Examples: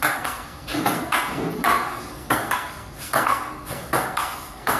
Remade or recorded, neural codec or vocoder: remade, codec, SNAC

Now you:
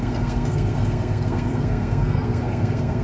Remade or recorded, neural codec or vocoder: remade, codec, SNAC